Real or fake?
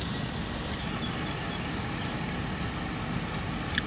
real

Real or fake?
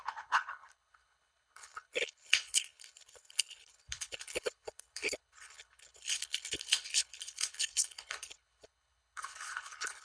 fake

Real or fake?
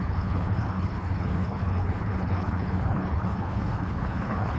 fake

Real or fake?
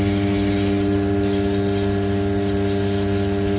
real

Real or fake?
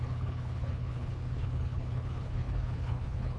fake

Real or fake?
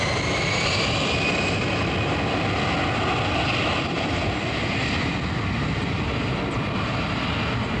real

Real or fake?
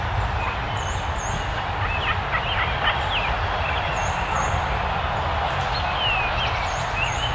real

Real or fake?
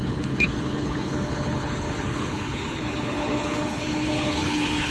fake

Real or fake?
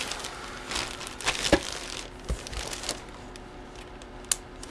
real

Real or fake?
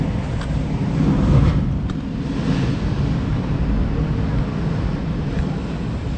real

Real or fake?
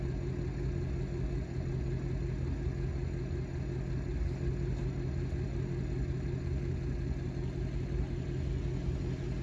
real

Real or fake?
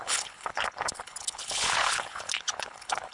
fake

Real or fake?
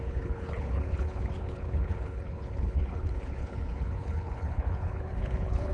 fake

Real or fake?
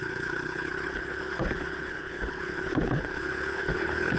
fake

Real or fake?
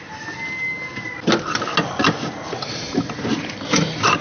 real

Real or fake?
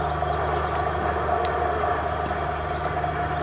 real